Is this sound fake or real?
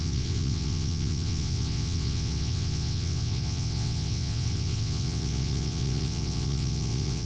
fake